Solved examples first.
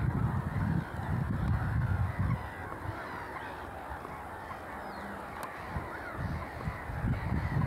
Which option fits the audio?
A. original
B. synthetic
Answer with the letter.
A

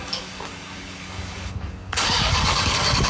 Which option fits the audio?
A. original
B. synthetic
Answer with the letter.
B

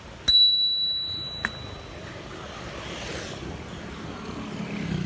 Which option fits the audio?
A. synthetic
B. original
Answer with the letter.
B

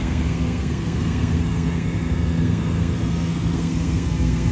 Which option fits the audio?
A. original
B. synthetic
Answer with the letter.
B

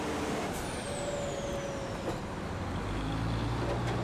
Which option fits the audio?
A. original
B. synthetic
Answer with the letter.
A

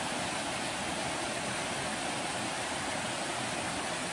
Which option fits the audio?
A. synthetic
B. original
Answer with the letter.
A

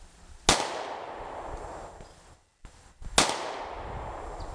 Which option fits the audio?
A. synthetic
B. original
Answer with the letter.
B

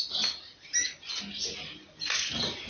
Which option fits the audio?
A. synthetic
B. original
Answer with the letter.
B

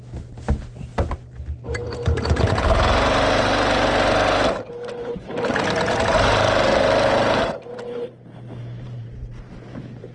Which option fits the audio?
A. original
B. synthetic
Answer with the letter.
B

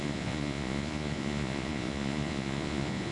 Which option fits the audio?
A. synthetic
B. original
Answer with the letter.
A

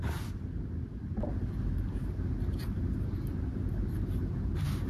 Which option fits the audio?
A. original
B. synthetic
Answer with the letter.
A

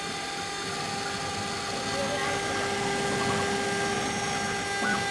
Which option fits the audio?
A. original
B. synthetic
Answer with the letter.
A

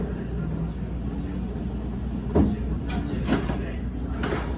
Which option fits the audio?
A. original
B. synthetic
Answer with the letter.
A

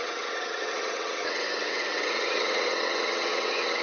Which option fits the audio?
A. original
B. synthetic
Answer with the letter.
B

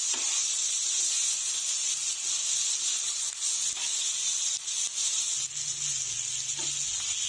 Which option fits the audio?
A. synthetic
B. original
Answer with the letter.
B